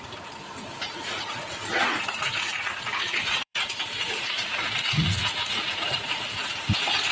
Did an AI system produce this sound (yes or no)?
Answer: yes